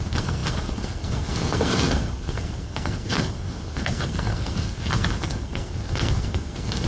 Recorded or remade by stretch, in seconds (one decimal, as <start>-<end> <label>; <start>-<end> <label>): 0.0-6.9 remade